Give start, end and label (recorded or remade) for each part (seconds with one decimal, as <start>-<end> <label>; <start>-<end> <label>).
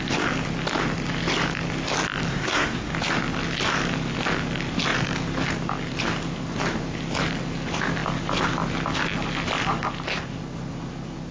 0.0-2.3 recorded; 2.3-2.9 remade; 2.9-11.3 recorded